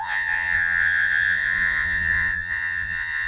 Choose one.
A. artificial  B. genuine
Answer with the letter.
A